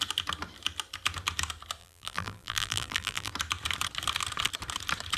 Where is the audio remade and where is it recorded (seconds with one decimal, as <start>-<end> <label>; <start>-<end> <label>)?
0.0-1.8 recorded; 1.8-3.3 remade; 3.3-5.2 recorded